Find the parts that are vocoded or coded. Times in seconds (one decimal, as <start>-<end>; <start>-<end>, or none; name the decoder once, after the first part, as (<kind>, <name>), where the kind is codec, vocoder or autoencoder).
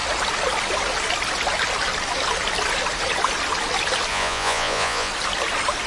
4.1-5.1 (vocoder, Vocos)